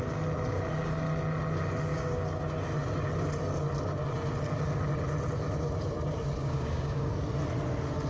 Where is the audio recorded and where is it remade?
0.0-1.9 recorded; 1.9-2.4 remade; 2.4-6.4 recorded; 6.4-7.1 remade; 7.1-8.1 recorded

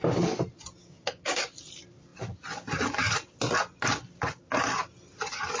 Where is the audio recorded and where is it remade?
0.0-0.8 recorded; 0.8-1.4 remade; 1.4-5.6 recorded

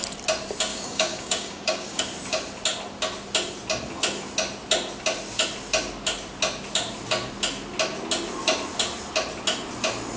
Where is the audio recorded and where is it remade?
0.0-0.7 recorded; 0.7-2.0 remade; 2.0-10.2 recorded

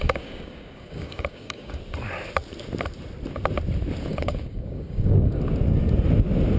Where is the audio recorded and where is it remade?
0.0-1.8 remade; 1.8-4.1 recorded; 4.1-5.4 remade; 5.4-6.6 recorded